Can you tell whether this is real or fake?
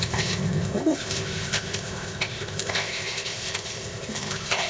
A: fake